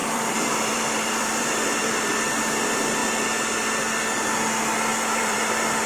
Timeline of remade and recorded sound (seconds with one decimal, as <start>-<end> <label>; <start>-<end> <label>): 0.0-2.3 remade; 2.3-4.9 recorded; 4.9-5.5 remade; 5.5-5.9 recorded

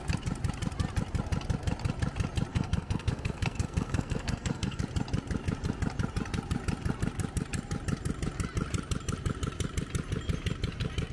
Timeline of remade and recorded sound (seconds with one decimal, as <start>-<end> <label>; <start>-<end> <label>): 0.0-2.5 recorded; 2.5-4.8 remade; 4.8-11.1 recorded

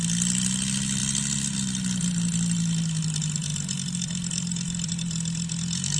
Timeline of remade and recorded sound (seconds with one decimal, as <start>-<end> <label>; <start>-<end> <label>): 0.0-6.0 recorded

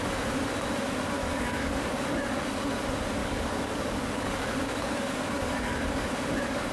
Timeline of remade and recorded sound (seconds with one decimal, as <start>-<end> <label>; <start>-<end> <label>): 0.0-1.2 recorded; 1.2-2.6 remade; 2.6-3.2 recorded; 3.2-6.7 remade

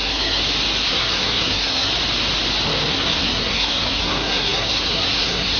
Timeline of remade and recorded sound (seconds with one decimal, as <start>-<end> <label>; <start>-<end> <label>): 0.0-0.4 remade; 0.4-0.9 recorded; 0.9-1.9 remade; 1.9-2.9 recorded; 2.9-5.6 remade

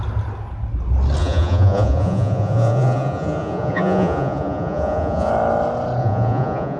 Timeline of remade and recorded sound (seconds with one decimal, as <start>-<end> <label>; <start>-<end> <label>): 0.0-1.2 recorded; 1.2-5.3 remade; 5.3-6.0 recorded; 6.0-6.8 remade

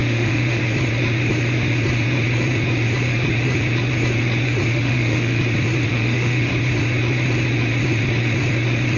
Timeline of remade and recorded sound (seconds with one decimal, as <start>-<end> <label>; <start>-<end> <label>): 0.0-0.6 remade; 0.6-4.7 recorded; 4.7-5.4 remade; 5.4-5.9 recorded; 5.9-6.5 remade; 6.5-9.0 recorded